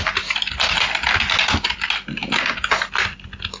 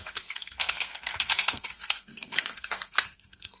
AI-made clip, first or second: second